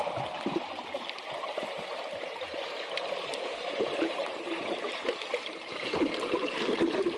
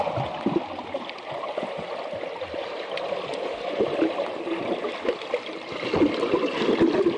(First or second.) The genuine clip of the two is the second